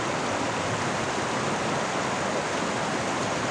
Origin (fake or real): real